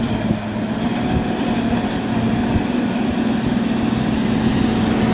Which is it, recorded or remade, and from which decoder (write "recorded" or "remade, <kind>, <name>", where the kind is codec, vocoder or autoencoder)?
recorded